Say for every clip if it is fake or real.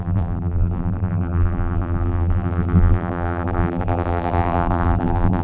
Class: fake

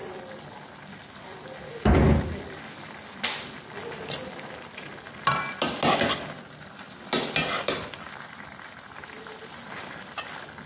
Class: real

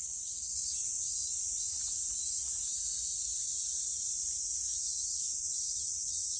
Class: fake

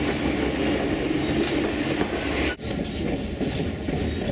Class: real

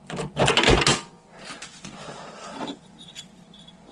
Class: real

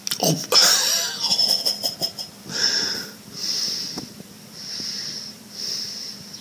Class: real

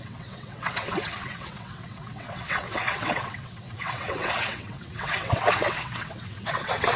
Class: fake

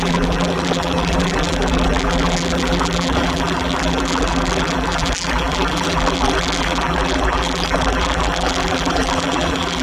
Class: fake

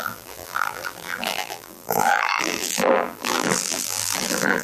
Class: fake